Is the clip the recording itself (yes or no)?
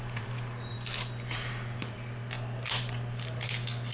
yes